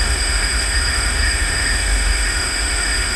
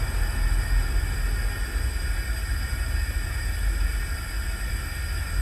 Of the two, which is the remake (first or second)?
first